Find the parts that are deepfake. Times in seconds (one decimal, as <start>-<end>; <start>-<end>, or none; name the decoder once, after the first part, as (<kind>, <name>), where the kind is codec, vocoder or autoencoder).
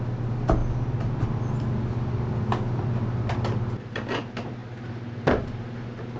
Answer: none